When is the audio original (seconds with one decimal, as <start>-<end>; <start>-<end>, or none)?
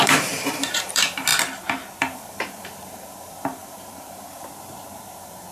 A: 1.3-2.0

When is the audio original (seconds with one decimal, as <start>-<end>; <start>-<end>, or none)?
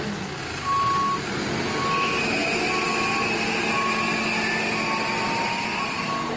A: 0.0-6.4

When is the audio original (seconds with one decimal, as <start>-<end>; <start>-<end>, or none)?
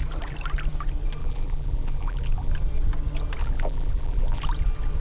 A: 0.0-1.2; 2.5-3.4; 4.4-5.0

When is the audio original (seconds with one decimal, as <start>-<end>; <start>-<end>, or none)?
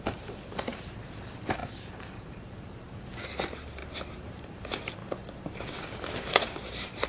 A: 3.8-4.3; 5.0-5.8